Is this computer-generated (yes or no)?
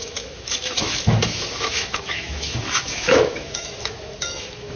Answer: yes